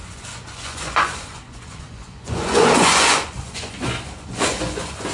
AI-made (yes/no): yes